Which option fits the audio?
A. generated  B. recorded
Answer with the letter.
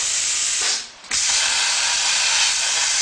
B